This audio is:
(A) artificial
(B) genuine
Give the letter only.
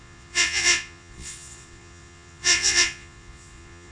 A